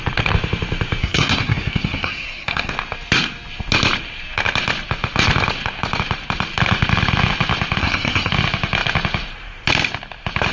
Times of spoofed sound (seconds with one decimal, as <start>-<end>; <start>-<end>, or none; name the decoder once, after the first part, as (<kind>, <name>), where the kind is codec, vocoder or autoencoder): 1.0-2.7 (codec, SNAC); 7.8-8.3